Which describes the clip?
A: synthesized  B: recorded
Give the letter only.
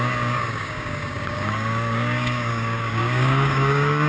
A